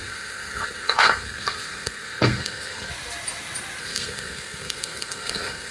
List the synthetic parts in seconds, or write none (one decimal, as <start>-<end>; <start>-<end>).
0.0-2.9; 3.8-5.7